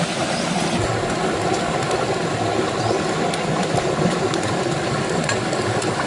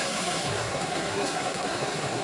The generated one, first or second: second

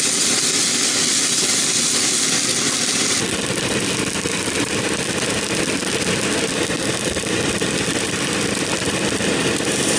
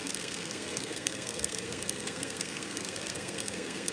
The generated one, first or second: second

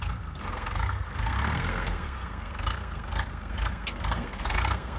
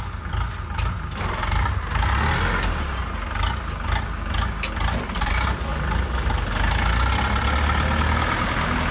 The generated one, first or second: first